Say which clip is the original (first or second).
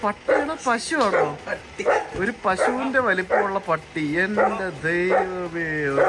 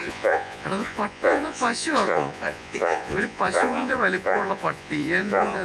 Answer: first